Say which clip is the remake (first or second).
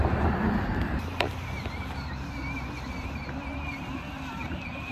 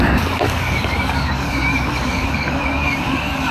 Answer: second